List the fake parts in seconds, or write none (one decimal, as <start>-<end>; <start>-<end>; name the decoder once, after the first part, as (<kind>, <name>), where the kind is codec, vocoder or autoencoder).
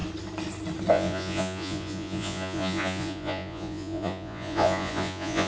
0.9-5.5 (vocoder, Vocos)